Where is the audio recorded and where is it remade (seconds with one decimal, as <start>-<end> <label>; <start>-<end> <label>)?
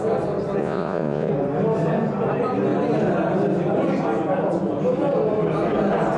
0.0-0.6 recorded; 0.6-1.3 remade; 1.3-6.2 recorded